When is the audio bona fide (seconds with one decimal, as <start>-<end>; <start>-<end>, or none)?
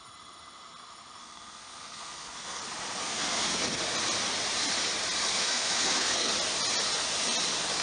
0.0-1.2; 2.6-3.0; 3.6-5.3; 6.3-7.8